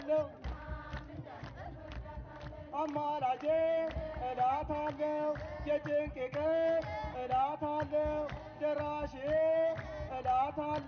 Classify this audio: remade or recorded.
recorded